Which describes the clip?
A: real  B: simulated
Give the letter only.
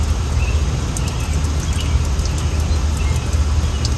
A